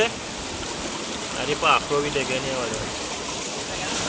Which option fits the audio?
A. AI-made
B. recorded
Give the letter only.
B